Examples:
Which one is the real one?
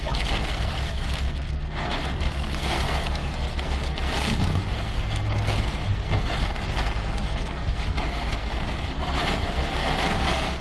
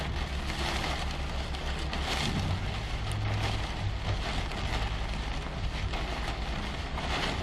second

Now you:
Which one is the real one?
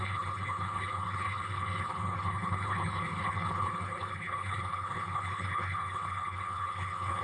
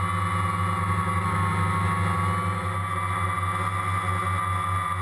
second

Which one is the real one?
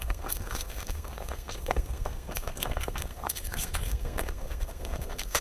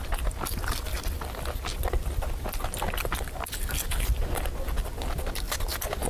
second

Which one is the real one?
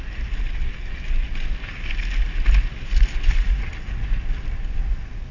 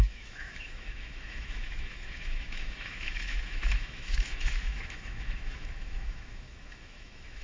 first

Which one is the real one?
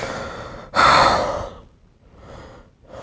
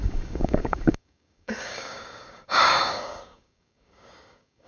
first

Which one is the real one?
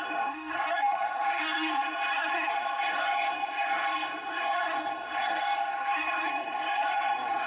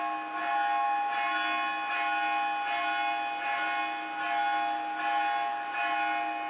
second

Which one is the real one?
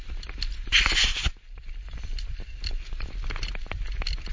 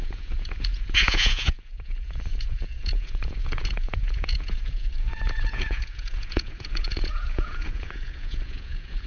first